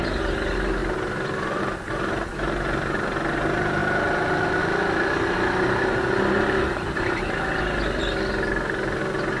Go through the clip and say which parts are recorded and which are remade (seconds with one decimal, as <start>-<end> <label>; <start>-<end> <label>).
0.0-0.8 recorded; 0.8-1.6 remade; 1.6-9.4 recorded